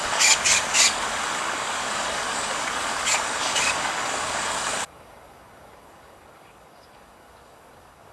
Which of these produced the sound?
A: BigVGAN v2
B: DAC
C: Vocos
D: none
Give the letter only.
B